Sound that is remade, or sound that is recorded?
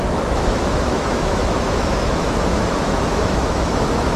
remade